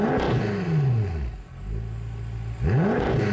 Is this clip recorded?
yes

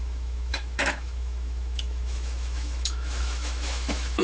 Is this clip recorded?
no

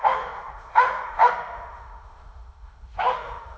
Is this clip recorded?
no